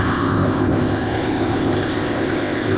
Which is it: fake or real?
fake